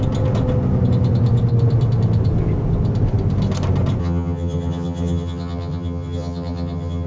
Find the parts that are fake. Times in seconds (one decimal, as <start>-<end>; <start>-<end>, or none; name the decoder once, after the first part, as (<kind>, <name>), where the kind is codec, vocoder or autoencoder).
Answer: 4.0-7.1 (vocoder, HiFi-GAN)